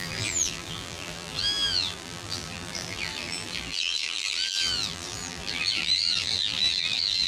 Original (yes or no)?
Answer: no